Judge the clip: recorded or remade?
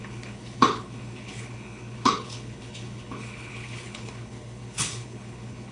remade